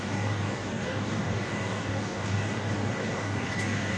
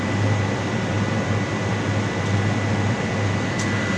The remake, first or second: first